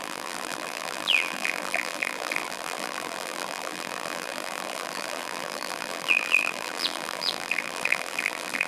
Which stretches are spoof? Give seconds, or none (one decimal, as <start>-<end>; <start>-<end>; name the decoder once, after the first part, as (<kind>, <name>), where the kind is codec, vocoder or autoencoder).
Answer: 0.0-8.7 (vocoder, BigVGAN v2)